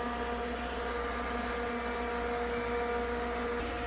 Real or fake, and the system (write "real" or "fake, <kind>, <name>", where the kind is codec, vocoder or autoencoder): real